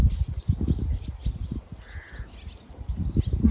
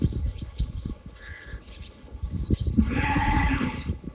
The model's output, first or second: second